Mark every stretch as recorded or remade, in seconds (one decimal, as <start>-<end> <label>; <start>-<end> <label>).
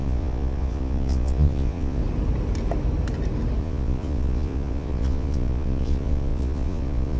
0.0-2.0 remade; 2.0-3.6 recorded; 3.6-7.2 remade